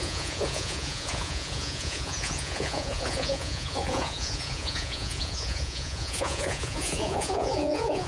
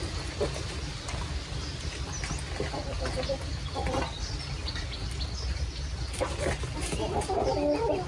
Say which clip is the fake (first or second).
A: first